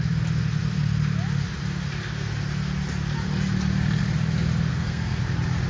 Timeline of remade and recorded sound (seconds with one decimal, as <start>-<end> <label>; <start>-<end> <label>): 0.0-4.7 recorded; 4.7-5.2 remade; 5.2-5.7 recorded